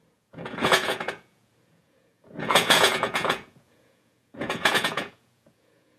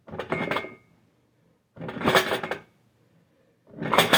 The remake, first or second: first